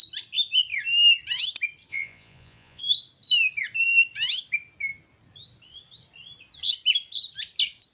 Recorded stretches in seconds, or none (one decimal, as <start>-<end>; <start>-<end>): 0.0-1.9; 2.8-7.9